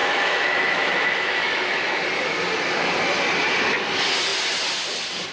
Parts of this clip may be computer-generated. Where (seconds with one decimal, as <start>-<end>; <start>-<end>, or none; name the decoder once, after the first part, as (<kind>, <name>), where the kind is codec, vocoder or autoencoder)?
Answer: 0.0-2.0 (autoencoder, DAC-VAE)